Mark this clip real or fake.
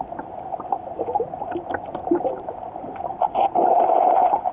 real